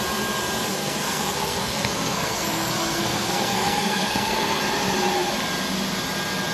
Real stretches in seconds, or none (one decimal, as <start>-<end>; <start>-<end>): 0.0-0.7; 4.6-6.5